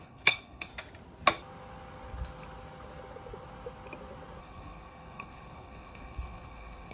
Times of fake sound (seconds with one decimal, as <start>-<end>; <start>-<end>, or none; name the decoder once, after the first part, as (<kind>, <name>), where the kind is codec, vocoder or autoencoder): 0.0-0.7 (codec, HILCodec); 4.4-6.9